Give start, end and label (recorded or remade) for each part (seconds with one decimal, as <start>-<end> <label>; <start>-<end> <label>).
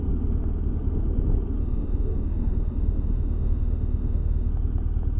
0.0-1.6 recorded; 1.6-4.5 remade; 4.5-5.2 recorded